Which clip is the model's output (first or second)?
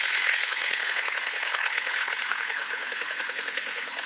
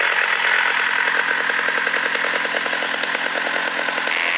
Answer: first